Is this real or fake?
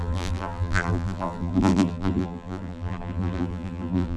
fake